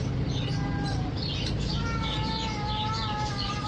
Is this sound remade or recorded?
recorded